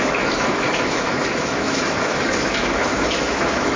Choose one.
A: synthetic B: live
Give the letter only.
A